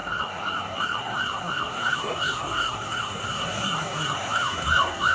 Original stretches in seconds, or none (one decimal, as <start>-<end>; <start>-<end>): none